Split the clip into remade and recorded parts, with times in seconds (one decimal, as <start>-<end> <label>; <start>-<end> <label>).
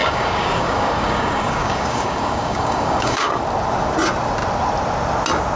0.0-3.4 remade; 3.4-5.6 recorded